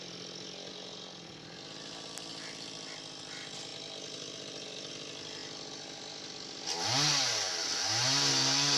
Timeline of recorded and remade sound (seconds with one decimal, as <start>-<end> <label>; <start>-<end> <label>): 0.0-8.8 recorded